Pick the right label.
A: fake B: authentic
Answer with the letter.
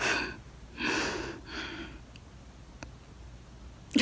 B